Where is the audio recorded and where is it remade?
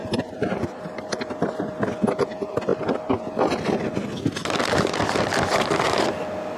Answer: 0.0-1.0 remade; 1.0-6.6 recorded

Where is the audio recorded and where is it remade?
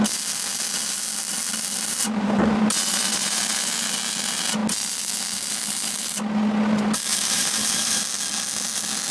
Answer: 0.0-2.0 recorded; 2.0-2.6 remade; 2.6-7.1 recorded; 7.1-8.0 remade; 8.0-9.1 recorded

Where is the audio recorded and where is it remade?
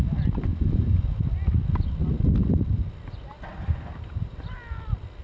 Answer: 0.0-0.5 recorded; 0.5-1.2 remade; 1.2-3.5 recorded; 3.5-4.4 remade; 4.4-5.2 recorded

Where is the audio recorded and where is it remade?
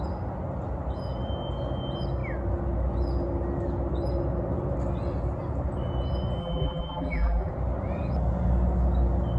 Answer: 0.0-6.4 recorded; 6.4-7.5 remade; 7.5-9.4 recorded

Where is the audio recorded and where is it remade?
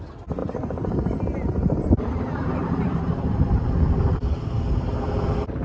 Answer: 0.0-0.4 recorded; 0.4-3.8 remade; 3.8-5.6 recorded